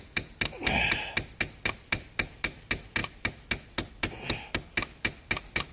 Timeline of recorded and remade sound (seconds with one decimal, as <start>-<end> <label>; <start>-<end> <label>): 0.0-5.7 recorded